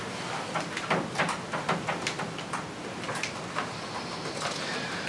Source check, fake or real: real